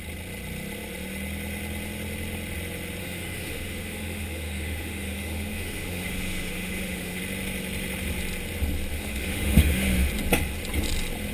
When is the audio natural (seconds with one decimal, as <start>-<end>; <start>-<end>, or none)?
0.0-3.0; 7.2-8.9; 10.1-11.3